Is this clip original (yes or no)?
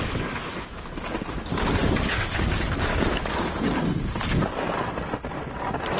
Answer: yes